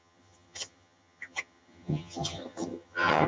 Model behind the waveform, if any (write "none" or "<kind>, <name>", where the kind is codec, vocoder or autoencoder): vocoder, HiFi-GAN